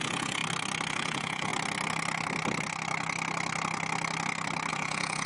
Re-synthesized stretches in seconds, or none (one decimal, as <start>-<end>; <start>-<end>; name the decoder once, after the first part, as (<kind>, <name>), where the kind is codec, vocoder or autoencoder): 0.0-0.4 (vocoder, Vocos); 0.9-1.5; 4.7-5.3

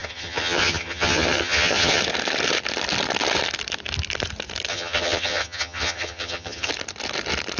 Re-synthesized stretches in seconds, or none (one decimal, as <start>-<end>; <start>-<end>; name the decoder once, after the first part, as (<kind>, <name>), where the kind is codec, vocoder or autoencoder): 0.0-2.0 (vocoder, HiFi-GAN); 4.7-6.7

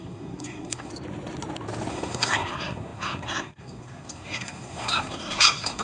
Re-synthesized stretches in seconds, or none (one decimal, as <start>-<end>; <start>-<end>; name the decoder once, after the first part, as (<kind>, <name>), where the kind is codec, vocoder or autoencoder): 0.0-0.9 (codec, SNAC); 1.9-5.8

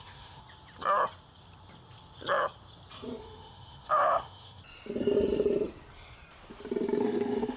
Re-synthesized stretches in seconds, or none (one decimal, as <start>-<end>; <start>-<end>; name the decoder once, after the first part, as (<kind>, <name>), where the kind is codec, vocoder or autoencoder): 0.0-0.4 (autoencoder, DAC-VAE); 3.2-4.6; 7.0-7.6